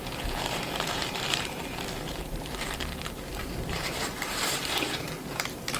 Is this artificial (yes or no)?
yes